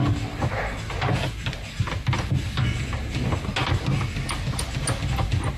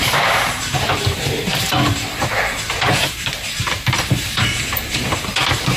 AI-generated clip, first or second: second